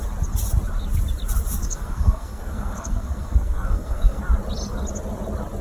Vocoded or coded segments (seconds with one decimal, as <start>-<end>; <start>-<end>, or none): 1.6-4.2